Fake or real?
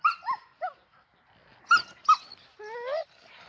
real